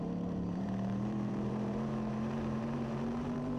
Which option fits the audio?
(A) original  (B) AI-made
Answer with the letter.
B